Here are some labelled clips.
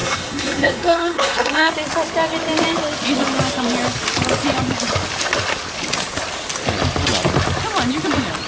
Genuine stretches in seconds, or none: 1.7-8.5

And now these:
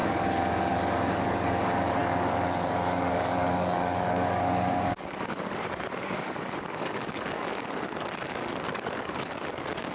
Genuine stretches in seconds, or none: none